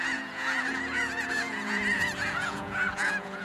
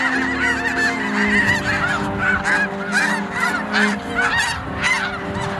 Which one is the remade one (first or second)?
first